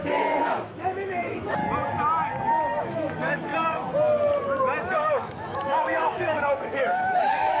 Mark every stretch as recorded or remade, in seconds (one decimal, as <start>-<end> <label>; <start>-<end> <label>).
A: 0.0-1.6 remade; 1.6-2.8 recorded; 2.8-3.5 remade; 3.5-4.9 recorded; 4.9-7.6 remade